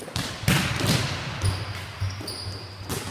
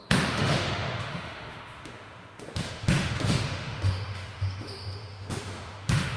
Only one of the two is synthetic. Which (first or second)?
second